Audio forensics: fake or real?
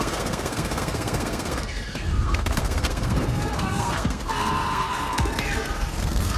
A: fake